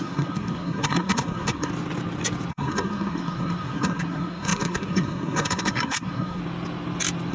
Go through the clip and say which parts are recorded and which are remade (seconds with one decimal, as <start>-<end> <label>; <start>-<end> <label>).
0.0-1.7 remade; 1.7-2.5 recorded; 2.5-6.4 remade; 6.4-7.3 recorded